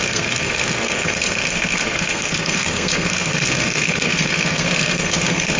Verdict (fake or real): fake